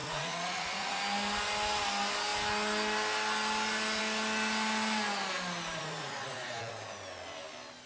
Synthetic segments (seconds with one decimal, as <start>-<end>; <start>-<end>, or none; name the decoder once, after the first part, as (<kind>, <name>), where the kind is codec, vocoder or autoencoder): 0.0-1.0 (vocoder, Vocos); 5.8-6.7